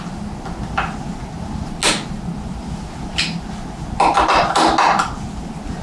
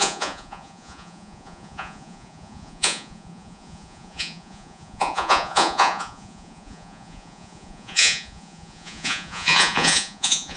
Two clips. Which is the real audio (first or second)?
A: first